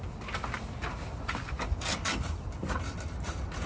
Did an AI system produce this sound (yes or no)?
no